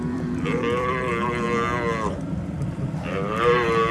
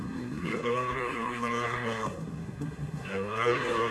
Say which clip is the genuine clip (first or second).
first